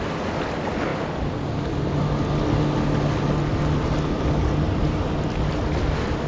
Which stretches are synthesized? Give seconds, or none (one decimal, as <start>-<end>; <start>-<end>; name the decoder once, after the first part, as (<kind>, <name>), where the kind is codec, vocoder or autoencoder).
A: none